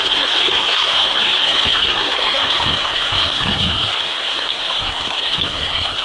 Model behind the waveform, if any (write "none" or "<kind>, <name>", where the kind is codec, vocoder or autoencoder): codec, SNAC